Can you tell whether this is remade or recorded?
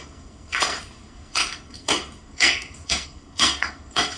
remade